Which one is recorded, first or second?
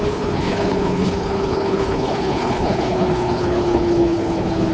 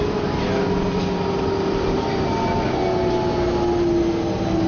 second